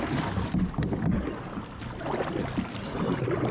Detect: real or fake real